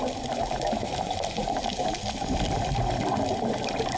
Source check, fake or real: real